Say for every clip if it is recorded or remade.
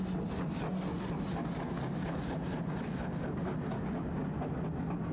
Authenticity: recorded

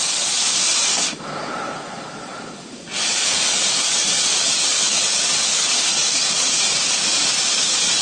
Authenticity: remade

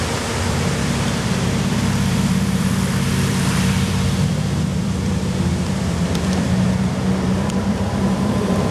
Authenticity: remade